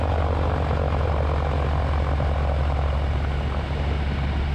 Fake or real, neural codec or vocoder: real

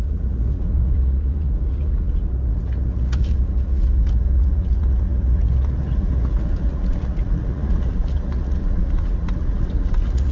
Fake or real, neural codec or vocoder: fake, vocoder, Vocos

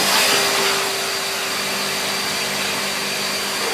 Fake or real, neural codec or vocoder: real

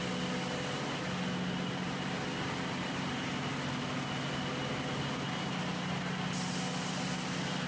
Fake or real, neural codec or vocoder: real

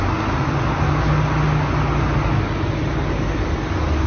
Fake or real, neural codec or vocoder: real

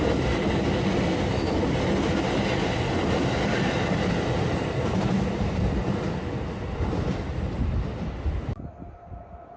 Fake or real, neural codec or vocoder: real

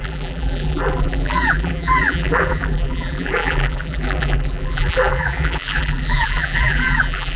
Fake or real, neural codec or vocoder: fake, vocoder, BigVGAN v2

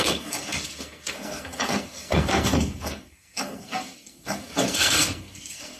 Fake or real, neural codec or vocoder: fake, codec, SNAC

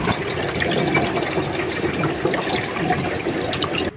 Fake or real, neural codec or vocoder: real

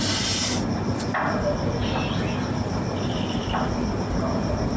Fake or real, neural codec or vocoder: real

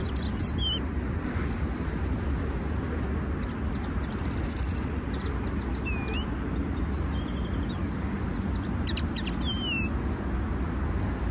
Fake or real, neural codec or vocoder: real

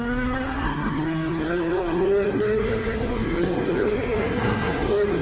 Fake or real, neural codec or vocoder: fake, codec, SNAC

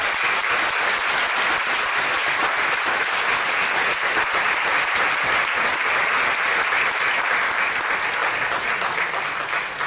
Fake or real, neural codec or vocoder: real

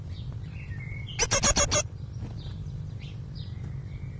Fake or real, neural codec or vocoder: real